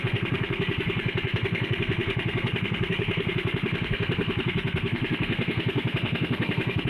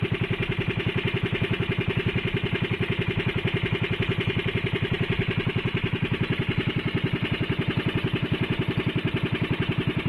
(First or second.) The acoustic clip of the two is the second